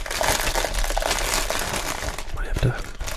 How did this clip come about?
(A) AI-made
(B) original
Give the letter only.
B